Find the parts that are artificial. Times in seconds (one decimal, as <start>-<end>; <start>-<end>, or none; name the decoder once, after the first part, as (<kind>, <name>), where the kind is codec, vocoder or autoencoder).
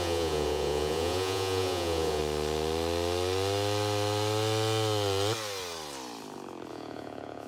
0.0-2.2 (vocoder, Vocos); 6.7-7.5